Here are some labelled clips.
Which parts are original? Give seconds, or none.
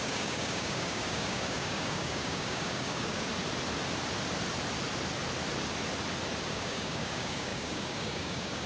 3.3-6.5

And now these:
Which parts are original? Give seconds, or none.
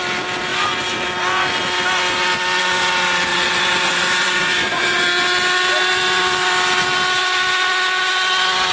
0.0-3.3; 5.0-8.7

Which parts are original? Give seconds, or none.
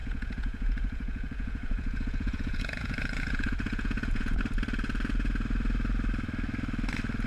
4.4-7.3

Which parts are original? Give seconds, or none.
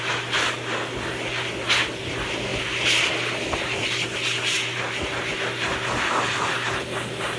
0.0-7.4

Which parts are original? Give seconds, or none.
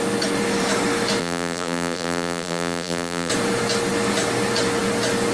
0.0-1.2; 3.3-5.3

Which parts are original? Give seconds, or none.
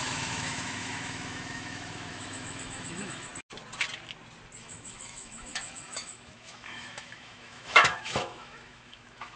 3.3-4.6